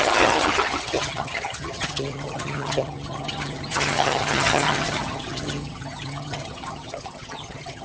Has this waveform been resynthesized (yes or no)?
yes